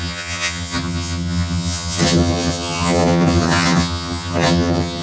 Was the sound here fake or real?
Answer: fake